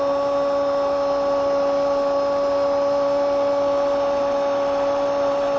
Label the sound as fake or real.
real